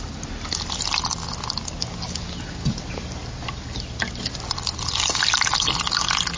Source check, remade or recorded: recorded